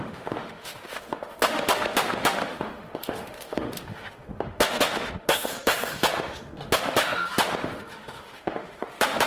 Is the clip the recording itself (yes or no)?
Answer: no